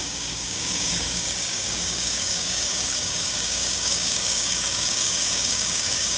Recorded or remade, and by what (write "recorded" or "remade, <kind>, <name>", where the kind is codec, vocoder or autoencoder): remade, codec, DAC